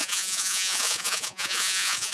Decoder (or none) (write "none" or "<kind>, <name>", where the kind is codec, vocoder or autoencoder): vocoder, Vocos